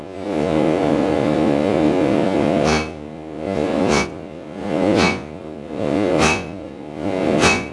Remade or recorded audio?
remade